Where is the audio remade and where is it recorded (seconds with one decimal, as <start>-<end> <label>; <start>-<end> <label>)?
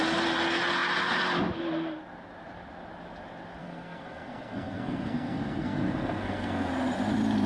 0.0-3.6 recorded; 3.6-6.7 remade; 6.7-7.5 recorded